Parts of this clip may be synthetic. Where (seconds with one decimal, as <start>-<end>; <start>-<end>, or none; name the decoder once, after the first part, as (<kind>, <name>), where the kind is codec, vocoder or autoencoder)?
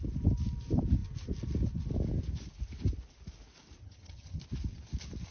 3.8-4.4 (vocoder, HiFi-GAN)